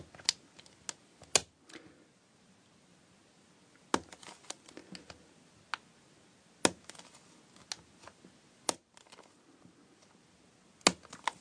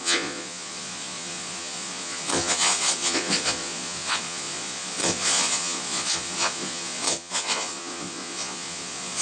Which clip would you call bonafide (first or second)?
first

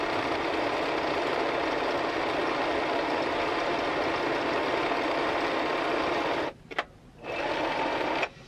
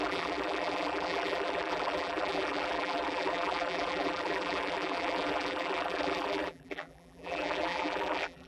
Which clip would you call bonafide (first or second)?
first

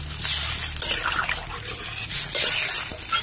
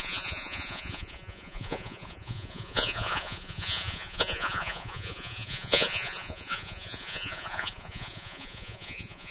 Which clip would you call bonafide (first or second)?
first